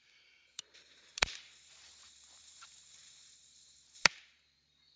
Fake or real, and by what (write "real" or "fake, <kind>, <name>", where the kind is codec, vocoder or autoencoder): fake, vocoder, BigVGAN v2